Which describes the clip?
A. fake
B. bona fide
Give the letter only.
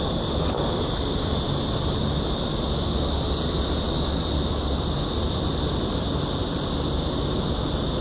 B